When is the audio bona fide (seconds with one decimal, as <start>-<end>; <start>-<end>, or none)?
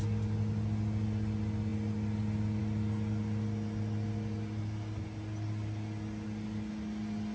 0.0-7.3